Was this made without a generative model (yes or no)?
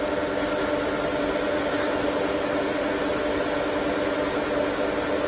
yes